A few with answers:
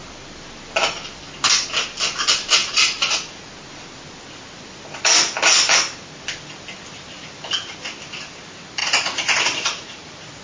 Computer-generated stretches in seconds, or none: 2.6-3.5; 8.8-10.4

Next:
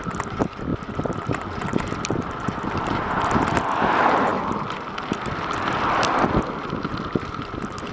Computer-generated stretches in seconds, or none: none

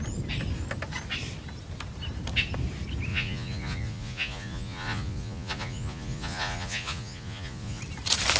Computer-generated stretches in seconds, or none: 3.1-7.8